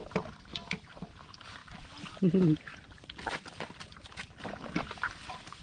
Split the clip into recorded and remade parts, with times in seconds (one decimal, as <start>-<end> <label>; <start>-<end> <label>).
0.0-0.5 remade; 0.5-1.6 recorded; 1.6-3.4 remade; 3.4-5.6 recorded